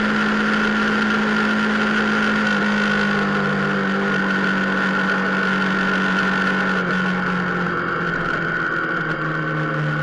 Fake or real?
real